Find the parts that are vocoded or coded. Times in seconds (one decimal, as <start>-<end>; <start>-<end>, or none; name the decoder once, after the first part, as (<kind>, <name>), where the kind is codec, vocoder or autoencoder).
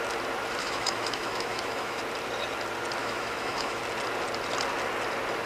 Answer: 0.6-2.0 (autoencoder, DAC-VAE); 3.0-3.8